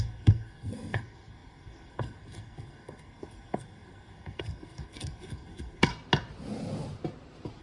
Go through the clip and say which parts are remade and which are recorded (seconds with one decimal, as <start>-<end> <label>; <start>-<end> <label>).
0.0-5.9 remade; 5.9-7.6 recorded

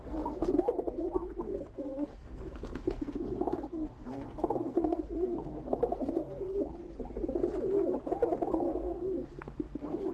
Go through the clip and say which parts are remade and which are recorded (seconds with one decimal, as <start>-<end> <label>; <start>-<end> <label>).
0.0-6.6 remade; 6.6-8.5 recorded; 8.5-10.1 remade

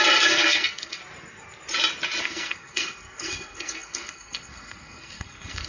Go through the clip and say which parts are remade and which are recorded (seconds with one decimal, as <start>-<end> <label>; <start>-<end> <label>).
0.0-1.0 remade; 1.0-2.2 recorded; 2.2-5.7 remade

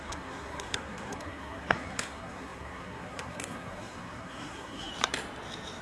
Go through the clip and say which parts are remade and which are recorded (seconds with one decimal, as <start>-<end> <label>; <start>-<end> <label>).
0.0-4.9 remade; 4.9-5.8 recorded